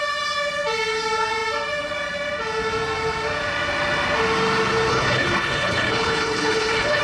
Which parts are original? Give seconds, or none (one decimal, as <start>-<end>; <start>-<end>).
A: 0.0-4.9